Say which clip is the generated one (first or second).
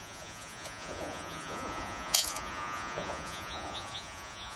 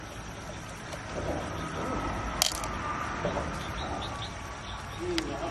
first